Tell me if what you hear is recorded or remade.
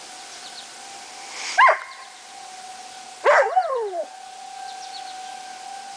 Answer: recorded